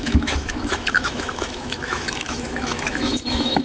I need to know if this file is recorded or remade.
remade